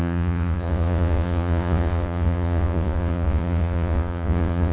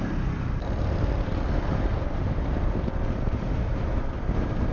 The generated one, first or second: first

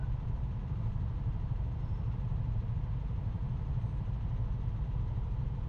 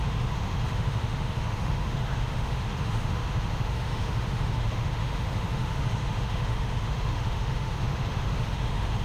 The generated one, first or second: second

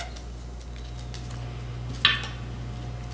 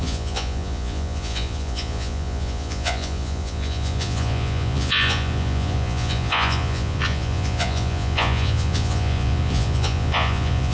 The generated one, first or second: second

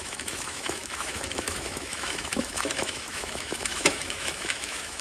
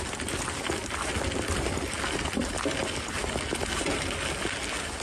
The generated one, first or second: first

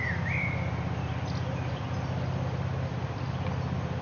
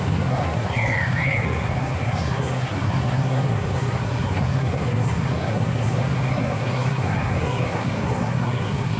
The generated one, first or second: second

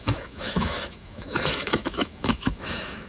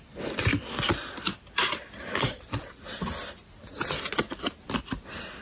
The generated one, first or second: first